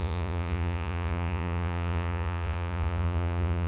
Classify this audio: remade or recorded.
remade